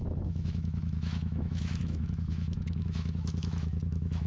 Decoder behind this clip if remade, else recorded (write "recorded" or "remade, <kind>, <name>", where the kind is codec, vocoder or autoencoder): remade, autoencoder, DAC-VAE